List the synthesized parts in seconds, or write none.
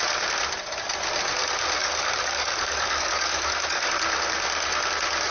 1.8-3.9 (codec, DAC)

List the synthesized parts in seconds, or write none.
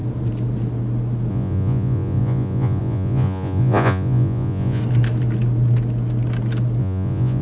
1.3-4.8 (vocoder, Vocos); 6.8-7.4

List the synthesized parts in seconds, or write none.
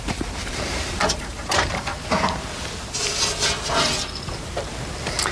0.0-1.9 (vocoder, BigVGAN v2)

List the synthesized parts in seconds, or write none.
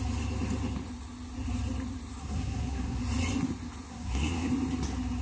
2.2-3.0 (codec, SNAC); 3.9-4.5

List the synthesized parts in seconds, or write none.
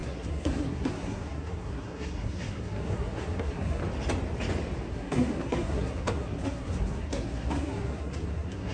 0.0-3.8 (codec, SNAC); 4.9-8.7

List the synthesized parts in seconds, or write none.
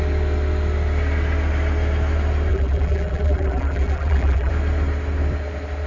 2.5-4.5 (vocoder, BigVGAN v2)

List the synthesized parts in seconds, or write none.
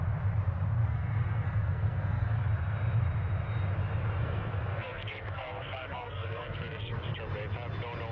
0.8-2.4 (codec, SNAC); 4.2-7.0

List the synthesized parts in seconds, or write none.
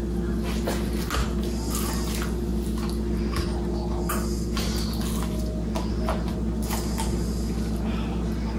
none